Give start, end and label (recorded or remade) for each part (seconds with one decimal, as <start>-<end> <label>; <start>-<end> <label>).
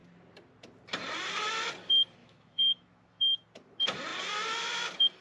0.0-2.2 recorded; 2.2-3.2 remade; 3.2-5.2 recorded